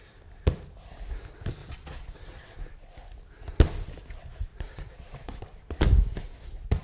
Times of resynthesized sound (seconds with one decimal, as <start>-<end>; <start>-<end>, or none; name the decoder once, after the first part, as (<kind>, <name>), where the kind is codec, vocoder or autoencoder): 1.6-2.6 (vocoder, Vocos); 4.5-5.4